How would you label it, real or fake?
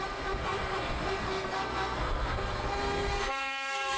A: fake